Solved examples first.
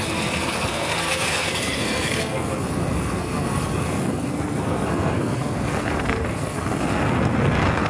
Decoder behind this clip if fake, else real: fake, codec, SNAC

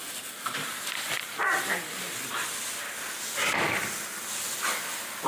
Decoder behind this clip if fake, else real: real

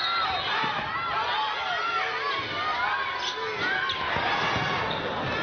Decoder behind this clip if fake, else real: real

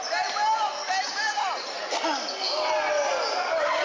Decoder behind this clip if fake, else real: real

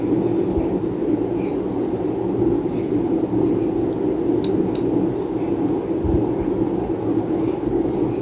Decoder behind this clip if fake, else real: real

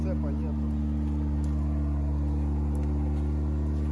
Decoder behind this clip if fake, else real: real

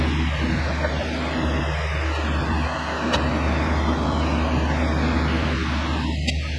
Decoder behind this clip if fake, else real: real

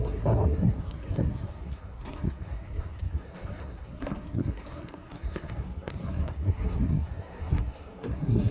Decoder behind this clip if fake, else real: fake, codec, SNAC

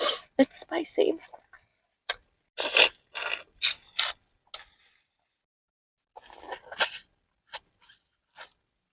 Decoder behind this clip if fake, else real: real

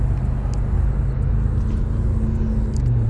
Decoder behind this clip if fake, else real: real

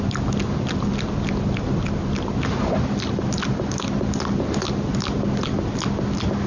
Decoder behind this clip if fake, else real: real